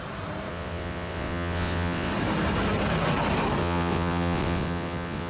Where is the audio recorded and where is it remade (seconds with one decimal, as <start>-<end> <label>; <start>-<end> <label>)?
0.0-0.5 recorded; 0.5-2.1 remade; 2.1-3.6 recorded; 3.6-5.3 remade